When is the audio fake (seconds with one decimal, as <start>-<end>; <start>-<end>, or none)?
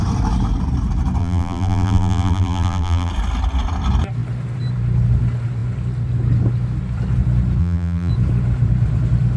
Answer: 1.2-3.1; 7.6-8.1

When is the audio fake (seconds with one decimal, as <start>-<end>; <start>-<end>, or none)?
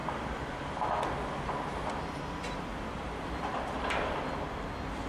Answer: 0.0-0.8; 2.7-3.7